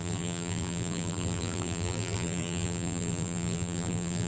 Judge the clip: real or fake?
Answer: fake